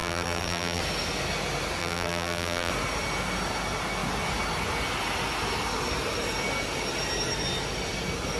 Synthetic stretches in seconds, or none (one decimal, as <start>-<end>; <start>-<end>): 0.0-0.8; 1.8-2.7